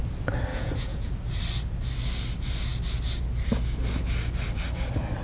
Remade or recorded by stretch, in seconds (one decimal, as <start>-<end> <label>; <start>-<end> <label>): 0.0-0.5 recorded; 0.5-1.1 remade; 1.1-5.2 recorded